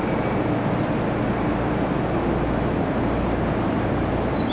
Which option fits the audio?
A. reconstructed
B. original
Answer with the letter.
B